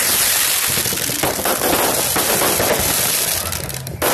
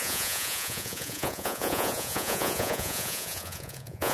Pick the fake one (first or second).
second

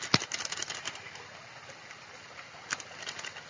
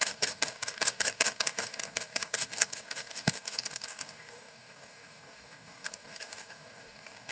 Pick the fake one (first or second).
second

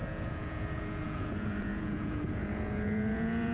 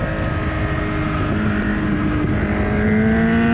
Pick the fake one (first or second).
first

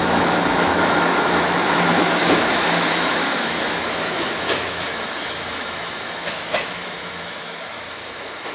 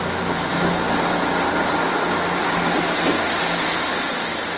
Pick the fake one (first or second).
first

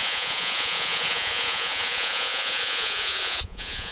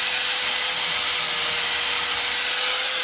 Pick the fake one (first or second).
first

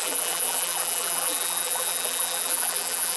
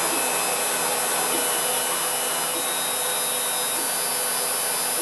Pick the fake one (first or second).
first